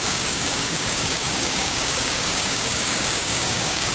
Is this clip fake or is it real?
fake